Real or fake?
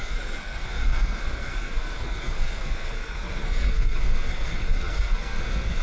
fake